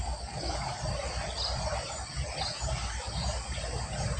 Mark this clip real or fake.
real